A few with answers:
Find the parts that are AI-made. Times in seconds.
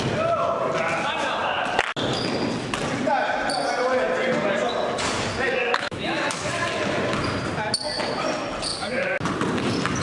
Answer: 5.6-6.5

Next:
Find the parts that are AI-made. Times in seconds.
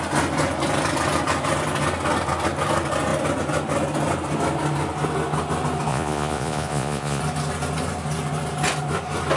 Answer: 5.9-7.2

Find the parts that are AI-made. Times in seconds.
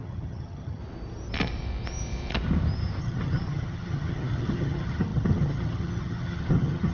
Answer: 0.0-0.8; 3.0-6.9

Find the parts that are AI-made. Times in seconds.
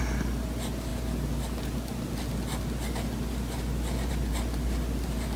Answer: none